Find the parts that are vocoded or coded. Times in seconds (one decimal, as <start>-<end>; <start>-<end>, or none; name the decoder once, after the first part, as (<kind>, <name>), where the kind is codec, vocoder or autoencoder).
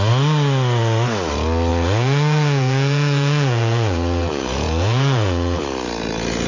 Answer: 1.7-5.6 (vocoder, Vocos)